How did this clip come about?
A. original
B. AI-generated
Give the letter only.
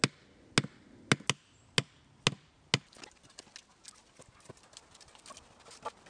A